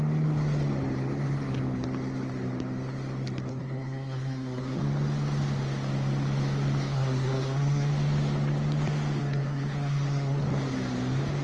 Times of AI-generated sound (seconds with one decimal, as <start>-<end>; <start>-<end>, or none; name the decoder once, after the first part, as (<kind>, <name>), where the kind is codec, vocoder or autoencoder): 3.5-4.8 (codec, SNAC); 6.9-7.9; 9.2-10.4